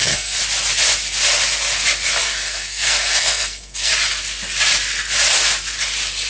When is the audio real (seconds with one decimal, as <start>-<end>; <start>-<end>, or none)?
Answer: 0.4-2.2; 3.9-6.3